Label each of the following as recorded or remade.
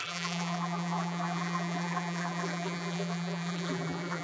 remade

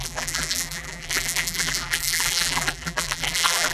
remade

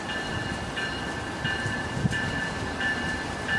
recorded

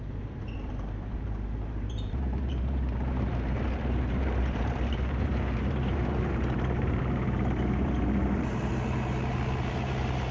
remade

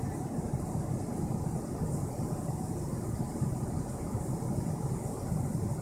recorded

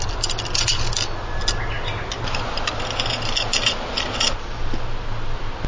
recorded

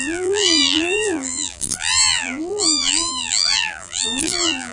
remade